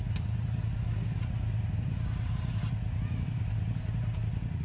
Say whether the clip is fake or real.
real